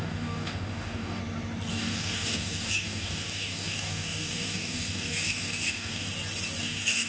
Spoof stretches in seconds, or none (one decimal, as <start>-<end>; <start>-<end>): 0.0-1.2; 1.7-6.1; 6.6-7.1